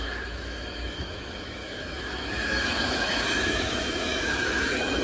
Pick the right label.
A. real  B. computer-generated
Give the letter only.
B